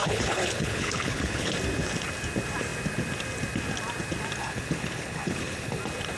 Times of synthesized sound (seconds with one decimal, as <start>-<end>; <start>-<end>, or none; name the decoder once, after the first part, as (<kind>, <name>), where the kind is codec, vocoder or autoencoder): 0.0-1.5 (codec, HILCodec); 4.4-5.8